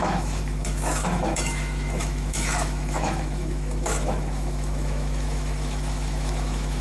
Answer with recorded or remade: remade